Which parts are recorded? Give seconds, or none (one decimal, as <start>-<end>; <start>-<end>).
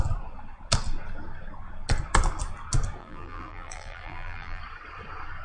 0.0-3.0; 4.6-5.4